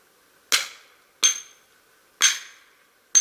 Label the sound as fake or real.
real